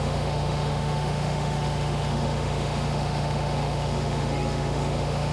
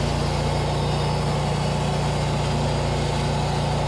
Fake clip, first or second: first